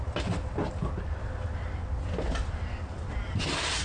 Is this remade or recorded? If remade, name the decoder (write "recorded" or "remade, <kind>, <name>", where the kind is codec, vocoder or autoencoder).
recorded